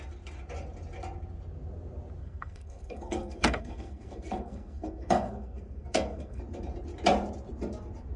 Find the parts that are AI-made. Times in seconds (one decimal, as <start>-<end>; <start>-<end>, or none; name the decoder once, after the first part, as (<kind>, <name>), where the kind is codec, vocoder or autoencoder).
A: 2.2-6.4 (codec, SNAC)